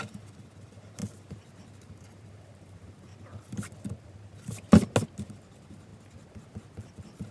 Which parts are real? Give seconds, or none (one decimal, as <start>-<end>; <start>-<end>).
1.0-1.7; 3.1-5.3; 5.9-7.3